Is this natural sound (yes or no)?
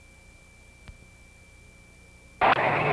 yes